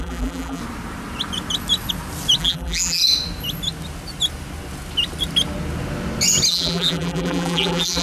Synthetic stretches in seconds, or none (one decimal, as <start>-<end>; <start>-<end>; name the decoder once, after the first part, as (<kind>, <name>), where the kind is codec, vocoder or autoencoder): 0.0-0.6 (vocoder, BigVGAN v2); 2.4-3.0; 6.5-8.0

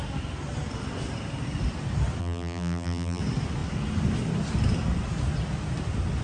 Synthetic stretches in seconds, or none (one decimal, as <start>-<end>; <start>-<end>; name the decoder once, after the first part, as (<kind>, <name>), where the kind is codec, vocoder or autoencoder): 2.2-3.2 (vocoder, BigVGAN v2)

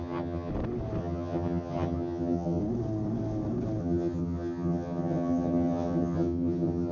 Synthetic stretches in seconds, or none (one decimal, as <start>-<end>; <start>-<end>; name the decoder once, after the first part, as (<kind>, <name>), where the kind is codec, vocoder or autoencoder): 0.0-0.5 (vocoder, HiFi-GAN); 1.0-2.6; 3.8-6.9

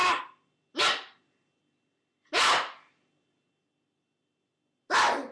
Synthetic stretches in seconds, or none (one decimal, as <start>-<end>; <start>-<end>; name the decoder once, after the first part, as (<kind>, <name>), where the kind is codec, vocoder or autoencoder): none

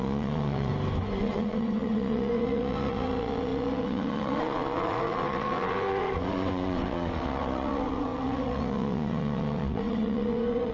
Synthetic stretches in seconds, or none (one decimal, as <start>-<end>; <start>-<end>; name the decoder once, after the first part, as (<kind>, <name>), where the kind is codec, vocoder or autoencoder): 0.0-0.7 (vocoder, WaveNeXt); 1.2-10.7

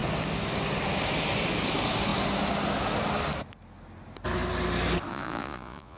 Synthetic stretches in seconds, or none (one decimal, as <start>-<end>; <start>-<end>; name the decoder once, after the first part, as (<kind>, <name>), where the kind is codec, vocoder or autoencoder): 5.1-6.0 (vocoder, Vocos)